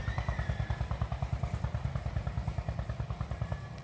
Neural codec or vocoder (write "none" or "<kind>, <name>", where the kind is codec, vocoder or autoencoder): none